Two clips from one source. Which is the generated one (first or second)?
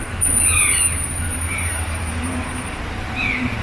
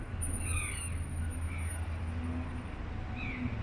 first